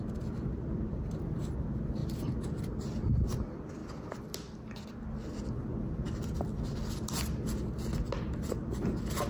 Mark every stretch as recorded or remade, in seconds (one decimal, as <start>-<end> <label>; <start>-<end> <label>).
0.0-9.3 recorded